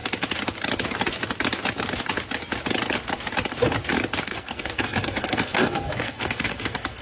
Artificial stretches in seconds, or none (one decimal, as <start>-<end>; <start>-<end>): 4.2-7.0